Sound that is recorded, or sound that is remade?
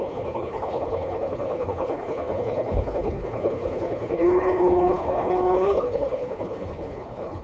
remade